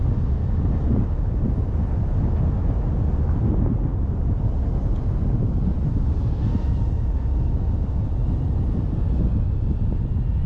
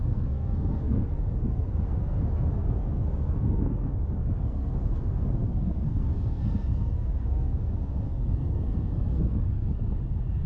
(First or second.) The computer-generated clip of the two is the second